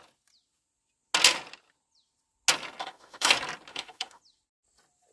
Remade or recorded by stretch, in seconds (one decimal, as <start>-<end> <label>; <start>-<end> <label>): 0.0-2.8 recorded; 2.8-3.3 remade; 3.3-3.7 recorded; 3.7-4.2 remade; 4.2-5.1 recorded